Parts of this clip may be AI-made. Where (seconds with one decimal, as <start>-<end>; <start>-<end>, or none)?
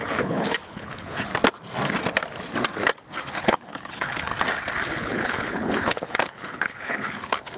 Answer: 0.0-1.3; 3.4-4.3; 4.9-7.6